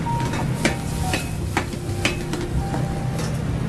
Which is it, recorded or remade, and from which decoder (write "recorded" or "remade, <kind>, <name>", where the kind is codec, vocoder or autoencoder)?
recorded